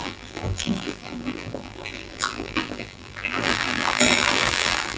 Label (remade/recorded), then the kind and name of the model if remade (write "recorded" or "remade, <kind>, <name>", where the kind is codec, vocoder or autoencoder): remade, vocoder, BigVGAN v2